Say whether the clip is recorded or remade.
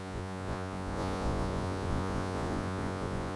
remade